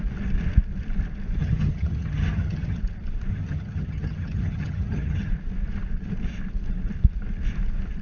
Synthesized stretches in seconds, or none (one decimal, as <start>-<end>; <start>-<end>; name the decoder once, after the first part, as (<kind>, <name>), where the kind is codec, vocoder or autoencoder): 1.4-2.8 (vocoder, HiFi-GAN); 3.3-5.3